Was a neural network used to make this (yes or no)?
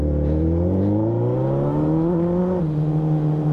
no